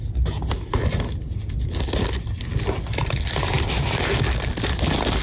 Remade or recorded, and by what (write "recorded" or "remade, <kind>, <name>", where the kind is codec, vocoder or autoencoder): recorded